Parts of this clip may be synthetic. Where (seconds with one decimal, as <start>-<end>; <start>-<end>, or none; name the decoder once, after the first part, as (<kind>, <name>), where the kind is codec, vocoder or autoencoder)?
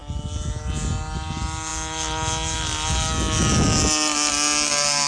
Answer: none